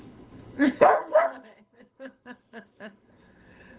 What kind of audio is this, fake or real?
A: fake